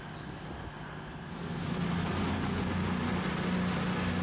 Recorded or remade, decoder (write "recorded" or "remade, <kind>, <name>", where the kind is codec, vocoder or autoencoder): recorded